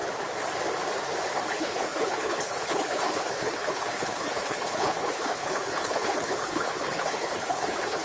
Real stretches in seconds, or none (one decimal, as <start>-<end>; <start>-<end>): 0.0-1.5